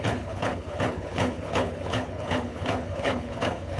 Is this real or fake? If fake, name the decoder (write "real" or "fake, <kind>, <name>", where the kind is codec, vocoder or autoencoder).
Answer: fake, codec, HILCodec